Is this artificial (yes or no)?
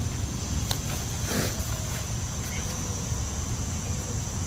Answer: yes